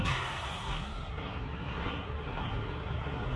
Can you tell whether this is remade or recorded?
remade